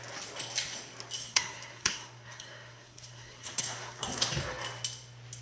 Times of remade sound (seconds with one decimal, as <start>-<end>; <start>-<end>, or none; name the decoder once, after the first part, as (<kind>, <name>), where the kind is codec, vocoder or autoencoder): 1.2-4.3 (codec, SNAC)